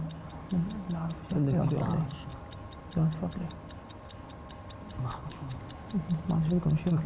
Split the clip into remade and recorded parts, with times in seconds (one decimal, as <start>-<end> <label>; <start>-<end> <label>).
0.0-5.1 recorded; 5.1-5.6 remade; 5.6-7.1 recorded